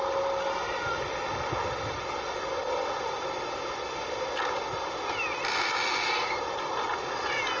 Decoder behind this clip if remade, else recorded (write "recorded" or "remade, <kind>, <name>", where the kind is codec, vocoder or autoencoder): recorded